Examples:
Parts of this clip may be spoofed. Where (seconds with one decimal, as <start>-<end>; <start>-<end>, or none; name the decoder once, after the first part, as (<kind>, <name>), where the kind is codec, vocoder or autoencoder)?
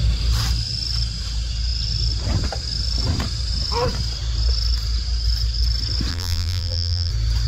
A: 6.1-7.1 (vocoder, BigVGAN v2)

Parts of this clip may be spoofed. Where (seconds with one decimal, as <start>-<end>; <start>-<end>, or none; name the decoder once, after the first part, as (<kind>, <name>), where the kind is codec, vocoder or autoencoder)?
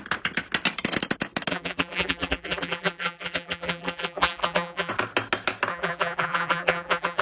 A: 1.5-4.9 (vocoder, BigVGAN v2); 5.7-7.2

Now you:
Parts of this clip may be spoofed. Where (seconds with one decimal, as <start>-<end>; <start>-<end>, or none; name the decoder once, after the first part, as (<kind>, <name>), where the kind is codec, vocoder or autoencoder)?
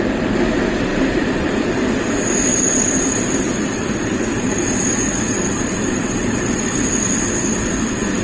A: 0.9-1.9 (vocoder, BigVGAN v2); 2.5-6.9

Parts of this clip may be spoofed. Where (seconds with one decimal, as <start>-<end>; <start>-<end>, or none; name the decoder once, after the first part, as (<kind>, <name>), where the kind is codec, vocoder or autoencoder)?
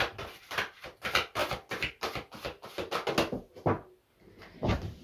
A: 0.0-1.4 (vocoder, BigVGAN v2); 4.4-5.0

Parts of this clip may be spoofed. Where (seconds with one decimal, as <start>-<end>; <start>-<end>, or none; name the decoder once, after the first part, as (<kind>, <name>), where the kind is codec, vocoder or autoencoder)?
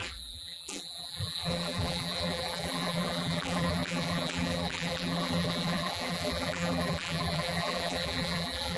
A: 0.0-8.8 (vocoder, BigVGAN v2)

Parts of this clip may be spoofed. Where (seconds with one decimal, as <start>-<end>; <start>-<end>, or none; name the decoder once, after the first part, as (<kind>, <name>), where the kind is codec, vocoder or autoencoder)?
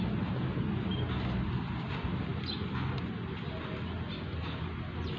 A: none